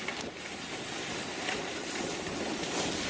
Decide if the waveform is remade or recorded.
recorded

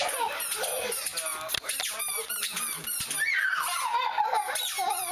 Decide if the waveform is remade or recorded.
recorded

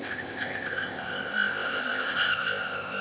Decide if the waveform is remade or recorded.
remade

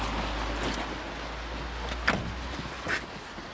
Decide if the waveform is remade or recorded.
recorded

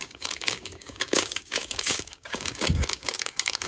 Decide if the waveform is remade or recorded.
remade